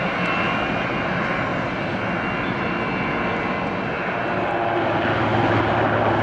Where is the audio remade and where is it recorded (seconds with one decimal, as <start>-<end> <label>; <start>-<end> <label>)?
0.0-6.2 recorded